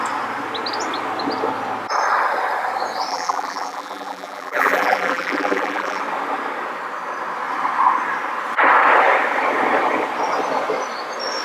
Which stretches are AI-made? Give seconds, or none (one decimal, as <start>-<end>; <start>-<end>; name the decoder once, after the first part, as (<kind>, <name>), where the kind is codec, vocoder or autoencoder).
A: 3.1-6.0 (vocoder, BigVGAN v2)